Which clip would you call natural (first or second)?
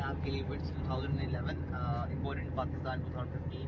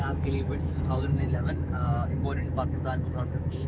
first